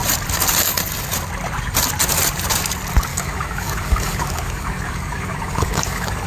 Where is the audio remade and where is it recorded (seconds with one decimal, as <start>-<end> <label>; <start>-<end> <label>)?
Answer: 0.0-3.1 recorded; 3.1-6.3 remade